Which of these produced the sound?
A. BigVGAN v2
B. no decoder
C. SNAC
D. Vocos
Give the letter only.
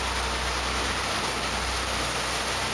B